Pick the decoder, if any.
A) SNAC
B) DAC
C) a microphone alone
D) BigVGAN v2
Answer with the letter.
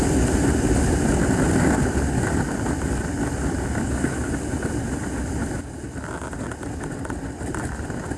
C